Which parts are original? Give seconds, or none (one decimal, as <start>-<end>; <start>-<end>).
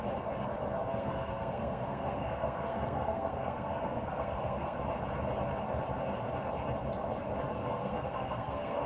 0.0-0.9; 4.8-7.5